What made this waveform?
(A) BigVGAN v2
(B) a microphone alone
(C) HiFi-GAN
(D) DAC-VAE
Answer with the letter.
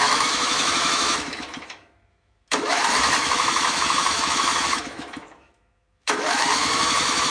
D